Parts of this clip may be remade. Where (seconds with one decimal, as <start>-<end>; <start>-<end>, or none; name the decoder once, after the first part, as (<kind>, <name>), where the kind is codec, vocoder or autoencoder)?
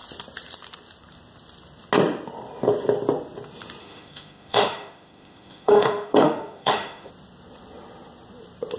3.8-7.1 (autoencoder, DAC-VAE)